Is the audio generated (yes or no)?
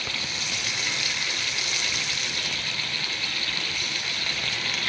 no